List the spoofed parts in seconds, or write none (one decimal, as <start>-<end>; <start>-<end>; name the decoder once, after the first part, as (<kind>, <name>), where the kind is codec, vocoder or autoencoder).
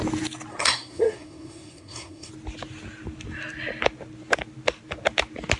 0.5-2.3 (codec, SNAC)